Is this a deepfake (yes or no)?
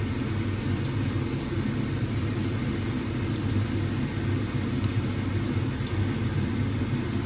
yes